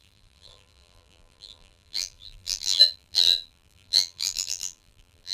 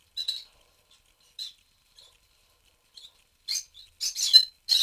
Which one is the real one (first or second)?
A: second